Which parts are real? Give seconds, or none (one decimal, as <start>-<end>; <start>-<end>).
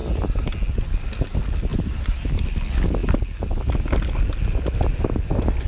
0.0-1.7; 2.5-5.7